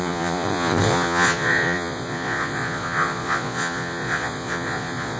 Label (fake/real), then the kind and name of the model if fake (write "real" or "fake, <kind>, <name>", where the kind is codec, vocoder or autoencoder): fake, vocoder, Vocos